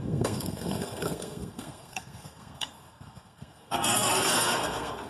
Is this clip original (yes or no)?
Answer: no